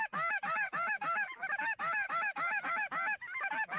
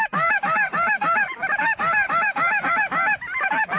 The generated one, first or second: second